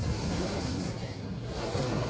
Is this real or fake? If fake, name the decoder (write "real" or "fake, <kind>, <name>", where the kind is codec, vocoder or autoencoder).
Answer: fake, codec, SNAC